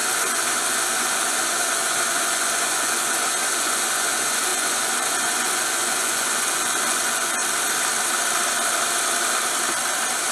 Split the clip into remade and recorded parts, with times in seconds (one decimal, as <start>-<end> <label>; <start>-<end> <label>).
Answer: 0.0-7.4 remade; 7.4-10.3 recorded